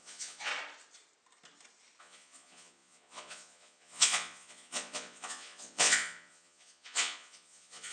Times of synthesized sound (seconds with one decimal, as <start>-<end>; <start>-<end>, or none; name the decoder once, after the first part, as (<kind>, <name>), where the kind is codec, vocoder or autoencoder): 0.0-0.5 (vocoder, Vocos); 2.0-7.9